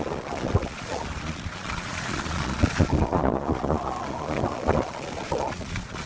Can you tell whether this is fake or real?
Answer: fake